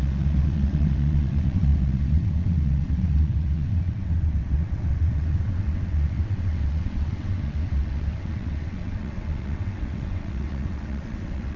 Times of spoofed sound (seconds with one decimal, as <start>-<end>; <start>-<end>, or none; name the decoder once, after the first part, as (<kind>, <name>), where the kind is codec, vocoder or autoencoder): 0.0-11.6 (vocoder, WaveNeXt)

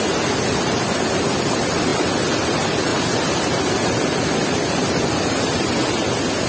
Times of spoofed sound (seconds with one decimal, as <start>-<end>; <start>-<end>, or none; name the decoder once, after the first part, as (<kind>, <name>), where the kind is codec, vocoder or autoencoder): none

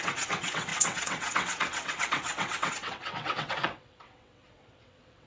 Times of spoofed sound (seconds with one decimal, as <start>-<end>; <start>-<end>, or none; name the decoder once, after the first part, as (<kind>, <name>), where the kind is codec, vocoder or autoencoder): 0.0-5.3 (vocoder, WaveNeXt)

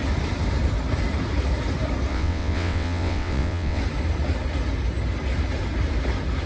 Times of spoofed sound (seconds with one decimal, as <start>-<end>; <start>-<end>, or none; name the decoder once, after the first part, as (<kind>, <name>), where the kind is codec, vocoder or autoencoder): 2.1-3.8 (vocoder, WaveNeXt)

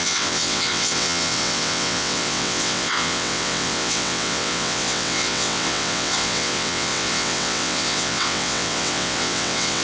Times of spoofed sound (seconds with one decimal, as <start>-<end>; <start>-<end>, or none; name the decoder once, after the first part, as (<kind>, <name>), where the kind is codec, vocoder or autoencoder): 0.0-9.8 (vocoder, WaveNeXt)

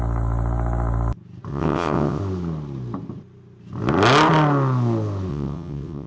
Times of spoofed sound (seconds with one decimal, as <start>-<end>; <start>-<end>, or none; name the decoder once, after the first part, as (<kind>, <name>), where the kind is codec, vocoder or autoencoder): 1.5-2.2 (vocoder, WaveNeXt); 5.3-6.1